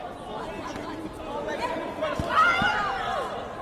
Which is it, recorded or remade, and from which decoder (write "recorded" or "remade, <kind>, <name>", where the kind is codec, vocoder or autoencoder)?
recorded